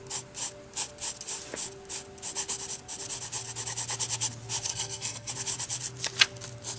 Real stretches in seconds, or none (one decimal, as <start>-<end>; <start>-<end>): 0.0-4.7; 5.3-6.8

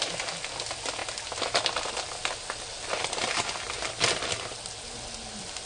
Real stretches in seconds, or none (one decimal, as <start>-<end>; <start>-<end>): 0.0-5.7

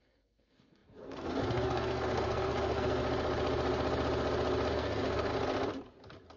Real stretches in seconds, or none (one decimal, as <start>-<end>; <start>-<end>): 3.0-4.7; 5.3-6.4

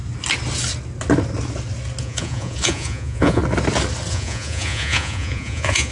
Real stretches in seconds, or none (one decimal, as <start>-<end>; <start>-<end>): 0.0-2.0; 3.4-4.1